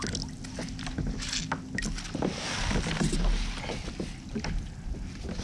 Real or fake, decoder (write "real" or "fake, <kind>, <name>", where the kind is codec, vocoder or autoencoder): real